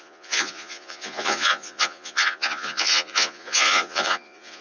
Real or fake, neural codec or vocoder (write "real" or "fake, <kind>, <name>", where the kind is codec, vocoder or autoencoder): fake, vocoder, Vocos